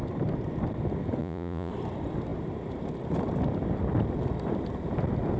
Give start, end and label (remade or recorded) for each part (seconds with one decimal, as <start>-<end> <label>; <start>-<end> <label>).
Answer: 0.0-1.2 recorded; 1.2-1.7 remade; 1.7-5.4 recorded

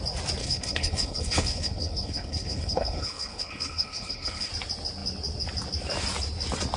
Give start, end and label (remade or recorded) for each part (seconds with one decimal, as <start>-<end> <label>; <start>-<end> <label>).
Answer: 0.0-0.4 recorded; 0.4-4.5 remade; 4.5-6.8 recorded

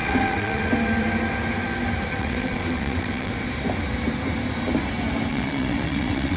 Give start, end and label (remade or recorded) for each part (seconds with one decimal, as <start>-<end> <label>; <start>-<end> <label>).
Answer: 0.0-0.7 remade; 0.7-2.1 recorded; 2.1-3.3 remade; 3.3-5.3 recorded; 5.3-6.4 remade

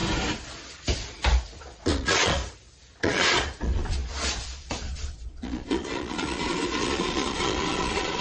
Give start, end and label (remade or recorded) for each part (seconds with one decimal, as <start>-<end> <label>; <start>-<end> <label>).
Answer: 0.0-1.6 recorded; 1.6-2.4 remade; 2.4-3.0 recorded; 3.0-8.2 remade

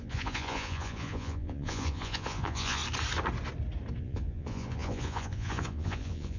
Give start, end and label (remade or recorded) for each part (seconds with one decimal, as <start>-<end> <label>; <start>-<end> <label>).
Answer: 0.0-2.8 remade; 2.8-4.0 recorded; 4.0-6.4 remade